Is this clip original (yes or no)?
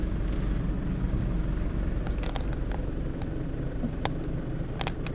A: yes